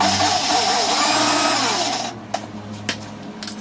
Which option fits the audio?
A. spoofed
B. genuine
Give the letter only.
B